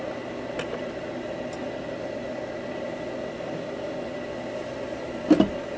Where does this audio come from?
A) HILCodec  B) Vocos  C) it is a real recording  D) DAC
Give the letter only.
C